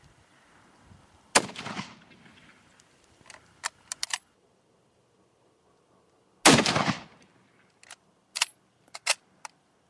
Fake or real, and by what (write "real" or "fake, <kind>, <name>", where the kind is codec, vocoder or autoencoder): real